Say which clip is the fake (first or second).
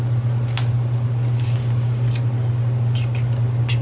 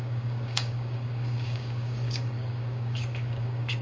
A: second